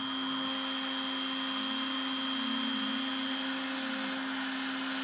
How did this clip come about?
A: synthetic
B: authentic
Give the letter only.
B